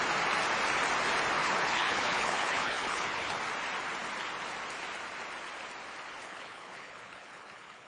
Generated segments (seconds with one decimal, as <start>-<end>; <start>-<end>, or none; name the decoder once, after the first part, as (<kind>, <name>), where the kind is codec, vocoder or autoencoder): 1.4-3.4 (codec, HILCodec); 6.2-7.9